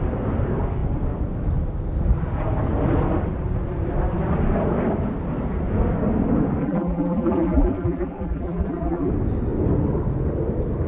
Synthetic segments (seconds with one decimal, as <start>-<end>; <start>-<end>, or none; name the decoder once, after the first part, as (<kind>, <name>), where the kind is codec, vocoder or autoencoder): 6.6-9.1 (vocoder, BigVGAN v2)